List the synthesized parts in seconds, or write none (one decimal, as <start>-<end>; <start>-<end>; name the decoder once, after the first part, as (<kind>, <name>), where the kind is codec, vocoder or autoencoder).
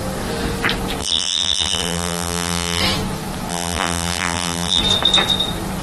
1.0-2.8 (vocoder, BigVGAN v2); 3.5-4.8